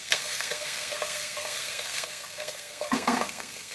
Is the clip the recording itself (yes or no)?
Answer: no